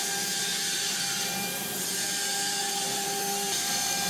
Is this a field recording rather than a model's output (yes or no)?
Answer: no